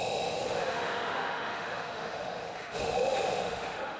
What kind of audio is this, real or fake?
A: fake